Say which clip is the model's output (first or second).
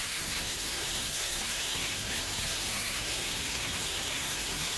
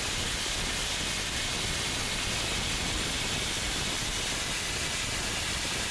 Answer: first